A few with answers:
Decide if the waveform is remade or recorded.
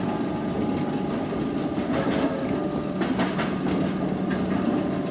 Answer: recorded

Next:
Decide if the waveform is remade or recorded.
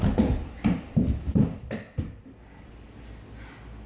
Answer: recorded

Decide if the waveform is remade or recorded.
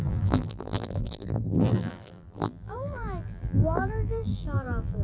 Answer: remade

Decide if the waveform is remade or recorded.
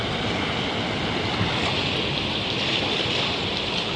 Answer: recorded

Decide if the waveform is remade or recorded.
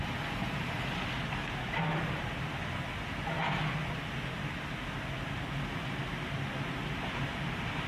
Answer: recorded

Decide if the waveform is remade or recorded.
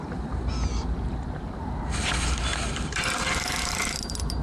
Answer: recorded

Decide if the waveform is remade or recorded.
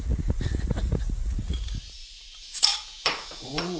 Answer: remade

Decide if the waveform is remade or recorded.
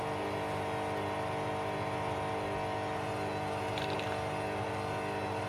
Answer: recorded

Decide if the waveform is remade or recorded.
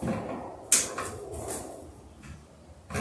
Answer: recorded